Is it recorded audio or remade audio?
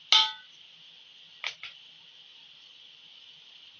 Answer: recorded